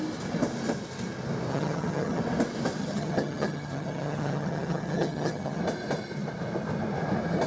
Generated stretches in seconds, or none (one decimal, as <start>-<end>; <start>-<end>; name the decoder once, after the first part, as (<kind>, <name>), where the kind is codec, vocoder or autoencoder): 1.5-2.2 (vocoder, HiFi-GAN); 2.8-5.6